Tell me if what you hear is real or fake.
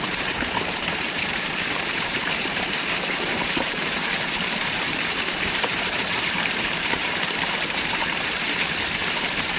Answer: fake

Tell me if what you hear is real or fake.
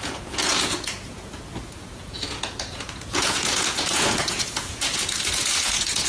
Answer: fake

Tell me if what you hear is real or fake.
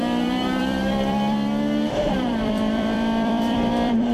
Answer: fake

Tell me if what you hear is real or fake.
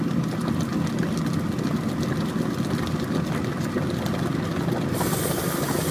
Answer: real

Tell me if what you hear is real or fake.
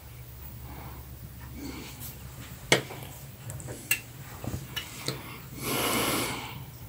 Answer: real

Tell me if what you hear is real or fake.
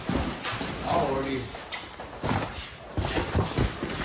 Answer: real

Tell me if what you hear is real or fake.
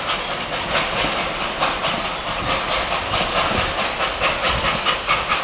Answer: real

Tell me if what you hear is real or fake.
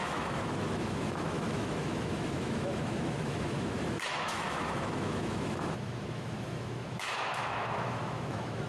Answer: fake